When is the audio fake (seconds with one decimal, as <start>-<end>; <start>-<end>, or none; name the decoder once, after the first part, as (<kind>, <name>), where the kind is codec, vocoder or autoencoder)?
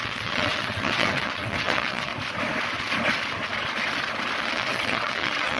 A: 0.0-2.1 (vocoder, WaveNeXt); 4.4-5.6